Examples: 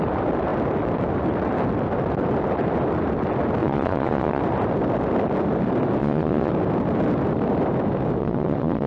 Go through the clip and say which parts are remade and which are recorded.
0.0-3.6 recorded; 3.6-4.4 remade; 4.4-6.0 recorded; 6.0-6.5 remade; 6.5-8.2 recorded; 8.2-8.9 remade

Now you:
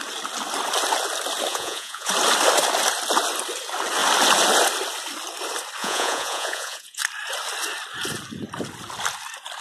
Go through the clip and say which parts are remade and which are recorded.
0.0-1.5 recorded; 1.5-2.1 remade; 2.1-5.8 recorded; 5.8-7.0 remade; 7.0-9.6 recorded

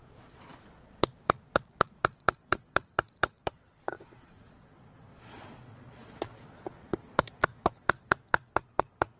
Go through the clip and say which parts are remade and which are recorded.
0.0-9.2 remade

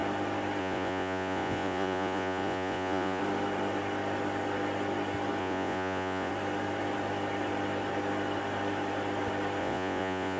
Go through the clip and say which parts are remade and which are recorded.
0.0-0.6 recorded; 0.6-3.2 remade; 3.2-5.4 recorded; 5.4-6.3 remade; 6.3-9.6 recorded; 9.6-10.4 remade

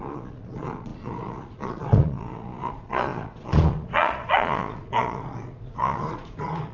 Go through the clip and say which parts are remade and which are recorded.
0.0-6.7 remade